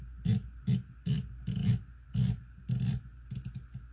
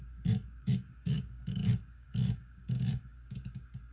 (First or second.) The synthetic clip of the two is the second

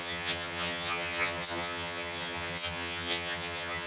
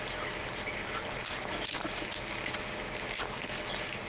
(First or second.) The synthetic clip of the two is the first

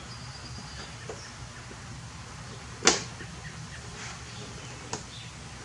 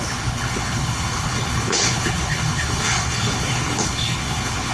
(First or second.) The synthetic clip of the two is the second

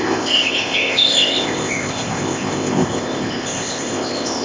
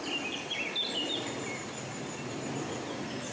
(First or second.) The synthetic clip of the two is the first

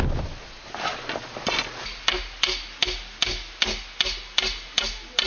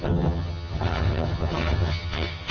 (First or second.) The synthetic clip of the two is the second